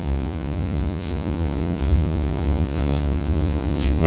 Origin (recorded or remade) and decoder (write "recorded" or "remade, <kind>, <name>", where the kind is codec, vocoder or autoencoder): remade, vocoder, Vocos